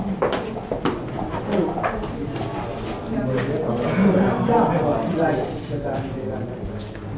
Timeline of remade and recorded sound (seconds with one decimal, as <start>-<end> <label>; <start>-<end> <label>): 0.0-7.2 recorded

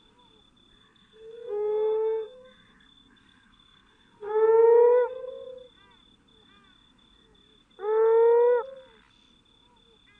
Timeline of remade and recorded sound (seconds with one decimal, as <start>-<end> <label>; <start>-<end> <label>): 0.0-0.8 recorded; 0.8-5.3 remade; 5.3-10.2 recorded

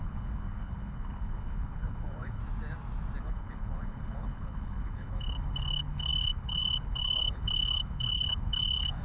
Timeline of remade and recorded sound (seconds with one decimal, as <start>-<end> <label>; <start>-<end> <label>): 0.0-2.4 remade; 2.4-3.2 recorded; 3.2-9.0 remade

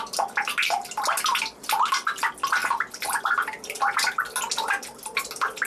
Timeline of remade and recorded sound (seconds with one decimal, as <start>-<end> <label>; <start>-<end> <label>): 0.0-5.7 recorded

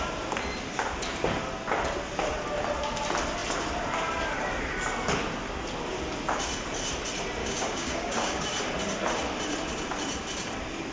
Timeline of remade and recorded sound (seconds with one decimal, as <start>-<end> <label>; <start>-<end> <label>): 0.0-7.4 recorded; 7.4-8.4 remade; 8.4-10.9 recorded

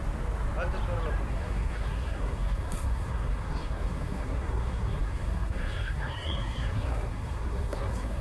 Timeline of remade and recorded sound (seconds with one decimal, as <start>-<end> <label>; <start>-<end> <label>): 0.0-1.3 recorded; 1.3-8.2 remade

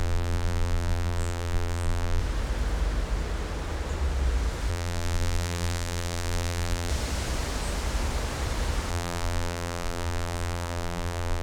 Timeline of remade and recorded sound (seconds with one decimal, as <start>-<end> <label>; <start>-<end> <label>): 0.0-2.2 remade; 2.2-4.7 recorded; 4.7-6.9 remade; 6.9-8.9 recorded; 8.9-11.4 remade

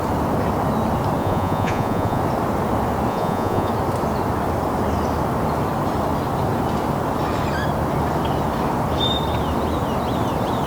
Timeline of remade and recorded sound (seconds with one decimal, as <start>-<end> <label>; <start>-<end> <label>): 0.0-1.2 recorded; 1.2-2.2 remade; 2.2-3.1 recorded; 3.1-3.7 remade; 3.7-10.7 recorded